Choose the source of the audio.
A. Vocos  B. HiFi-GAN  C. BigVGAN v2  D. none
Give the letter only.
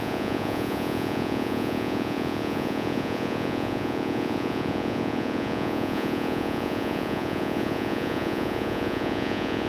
A